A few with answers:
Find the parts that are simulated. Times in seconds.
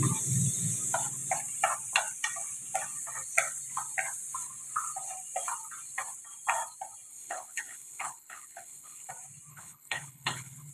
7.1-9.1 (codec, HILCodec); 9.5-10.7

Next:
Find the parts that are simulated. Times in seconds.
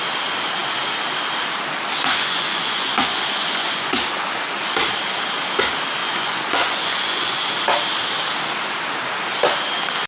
2.1-3.9 (vocoder, Vocos); 6.0-7.5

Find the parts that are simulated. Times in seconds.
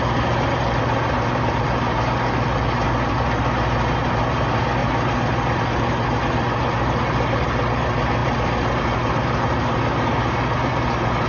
4.8-5.6 (vocoder, BigVGAN v2); 8.2-8.8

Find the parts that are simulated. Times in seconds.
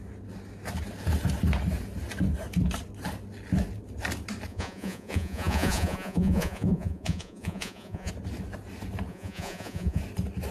4.5-8.1 (vocoder, Vocos); 9.1-10.0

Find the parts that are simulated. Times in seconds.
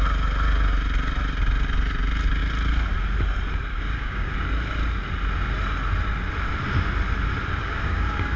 3.7-4.3 (codec, DAC); 7.6-8.4